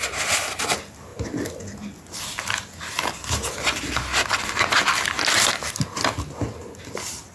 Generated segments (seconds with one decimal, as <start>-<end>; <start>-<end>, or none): none